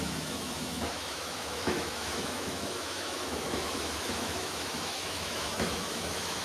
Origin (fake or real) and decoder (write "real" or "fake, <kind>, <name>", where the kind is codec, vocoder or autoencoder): fake, autoencoder, DAC-VAE